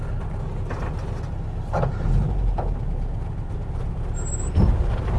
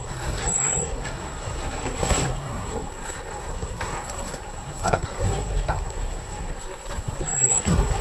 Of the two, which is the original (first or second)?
first